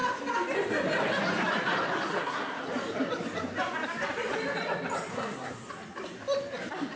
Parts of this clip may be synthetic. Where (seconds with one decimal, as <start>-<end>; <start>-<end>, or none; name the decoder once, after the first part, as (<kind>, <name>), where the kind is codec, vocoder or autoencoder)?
2.1-2.6 (codec, SNAC); 5.1-5.7